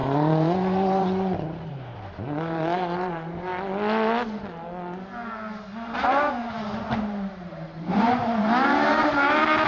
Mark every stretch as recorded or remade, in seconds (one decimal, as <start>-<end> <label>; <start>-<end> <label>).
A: 0.0-3.5 remade; 3.5-7.4 recorded; 7.4-9.7 remade